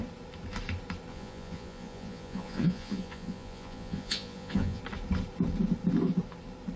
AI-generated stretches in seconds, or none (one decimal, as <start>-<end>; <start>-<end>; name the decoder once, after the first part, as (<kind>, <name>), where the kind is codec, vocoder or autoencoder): 1.1-4.8 (vocoder, Vocos)